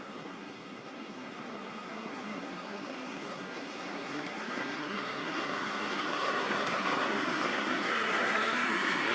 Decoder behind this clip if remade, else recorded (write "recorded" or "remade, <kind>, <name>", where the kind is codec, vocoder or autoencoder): remade, codec, SNAC